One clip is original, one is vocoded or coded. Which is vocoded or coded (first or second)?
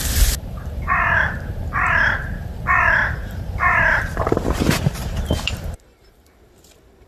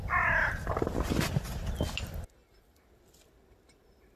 first